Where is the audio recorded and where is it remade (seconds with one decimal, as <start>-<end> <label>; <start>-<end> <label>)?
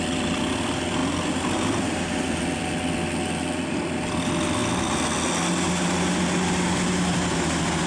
0.0-7.9 recorded